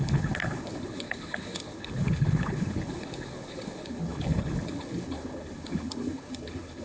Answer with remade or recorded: remade